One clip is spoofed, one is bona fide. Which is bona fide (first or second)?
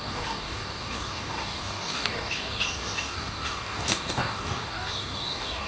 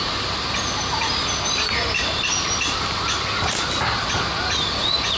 second